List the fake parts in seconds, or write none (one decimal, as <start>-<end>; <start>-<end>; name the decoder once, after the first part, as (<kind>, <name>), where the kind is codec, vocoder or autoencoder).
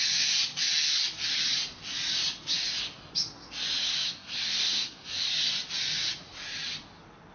3.8-5.3 (codec, SNAC)